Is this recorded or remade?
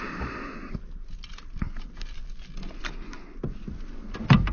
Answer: recorded